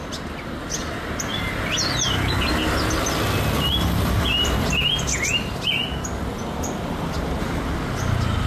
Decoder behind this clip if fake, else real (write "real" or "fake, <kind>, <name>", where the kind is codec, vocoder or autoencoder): real